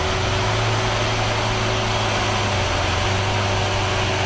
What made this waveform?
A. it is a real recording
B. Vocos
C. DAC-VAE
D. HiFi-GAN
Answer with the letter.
A